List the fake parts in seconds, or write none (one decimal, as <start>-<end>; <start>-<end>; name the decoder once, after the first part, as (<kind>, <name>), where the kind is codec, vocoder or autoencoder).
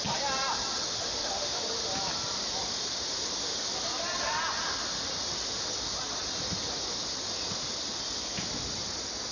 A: 0.9-1.6 (autoencoder, DAC-VAE)